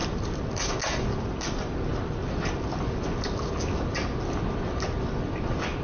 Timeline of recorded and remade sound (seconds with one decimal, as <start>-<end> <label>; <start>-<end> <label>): 0.0-5.8 recorded

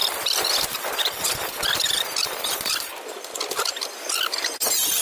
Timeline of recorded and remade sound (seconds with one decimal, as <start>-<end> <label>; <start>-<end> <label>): 0.0-5.0 remade

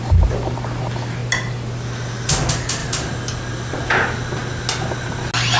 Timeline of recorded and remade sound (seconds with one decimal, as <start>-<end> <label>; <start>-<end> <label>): 0.0-5.6 recorded